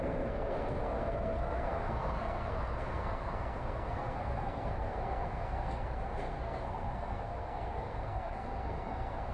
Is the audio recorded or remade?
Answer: remade